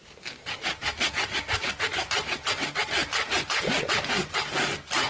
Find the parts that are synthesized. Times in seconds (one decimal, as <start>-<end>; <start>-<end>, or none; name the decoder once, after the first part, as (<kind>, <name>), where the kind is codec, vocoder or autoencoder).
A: none